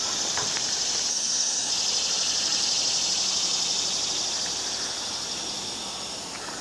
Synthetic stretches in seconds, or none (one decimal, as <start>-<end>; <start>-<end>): 1.1-1.7